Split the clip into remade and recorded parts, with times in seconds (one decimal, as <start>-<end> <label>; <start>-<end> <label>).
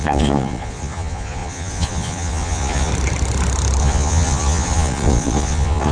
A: 0.0-2.9 remade; 2.9-3.8 recorded; 3.8-5.9 remade